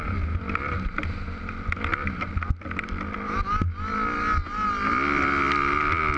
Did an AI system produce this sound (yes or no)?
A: no